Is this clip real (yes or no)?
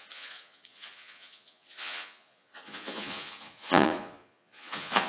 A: no